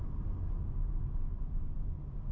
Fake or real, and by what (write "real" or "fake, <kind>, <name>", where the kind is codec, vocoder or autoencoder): real